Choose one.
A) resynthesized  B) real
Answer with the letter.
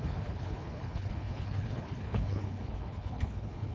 A